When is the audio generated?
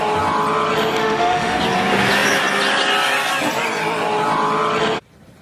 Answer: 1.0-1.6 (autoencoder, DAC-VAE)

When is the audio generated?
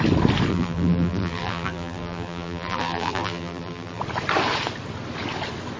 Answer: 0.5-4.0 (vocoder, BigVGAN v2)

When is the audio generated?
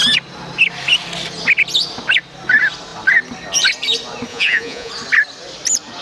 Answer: 4.3-4.9 (vocoder, Vocos)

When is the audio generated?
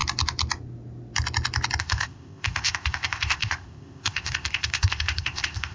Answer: 1.8-5.7 (codec, ZipCodec)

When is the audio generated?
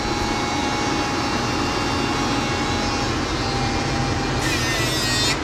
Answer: none